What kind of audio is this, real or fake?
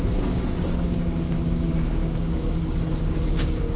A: fake